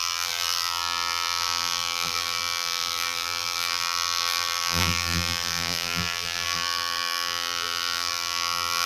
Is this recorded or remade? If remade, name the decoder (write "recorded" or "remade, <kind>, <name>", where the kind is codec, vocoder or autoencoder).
remade, vocoder, BigVGAN v2